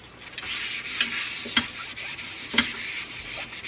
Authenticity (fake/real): real